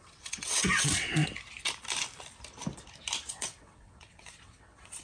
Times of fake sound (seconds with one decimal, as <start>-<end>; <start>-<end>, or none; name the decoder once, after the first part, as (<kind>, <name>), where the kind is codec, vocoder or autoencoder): 0.0-1.2 (vocoder, WaveNeXt); 3.3-5.0